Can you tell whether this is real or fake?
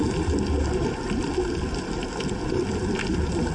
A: real